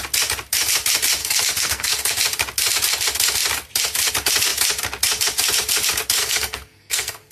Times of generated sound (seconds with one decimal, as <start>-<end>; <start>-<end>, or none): 1.2-2.1; 6.2-7.3